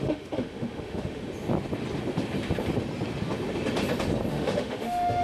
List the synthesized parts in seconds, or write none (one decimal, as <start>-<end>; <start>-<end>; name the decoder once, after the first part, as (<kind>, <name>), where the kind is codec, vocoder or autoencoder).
0.0-1.2 (autoencoder, DAC-VAE); 4.3-5.2